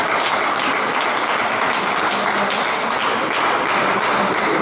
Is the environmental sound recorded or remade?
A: recorded